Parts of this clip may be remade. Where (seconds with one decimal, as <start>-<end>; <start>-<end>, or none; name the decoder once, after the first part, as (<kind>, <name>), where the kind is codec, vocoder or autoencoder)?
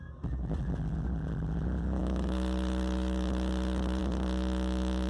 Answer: 2.0-4.0 (autoencoder, DAC-VAE)